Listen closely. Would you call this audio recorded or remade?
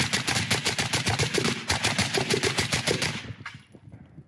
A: recorded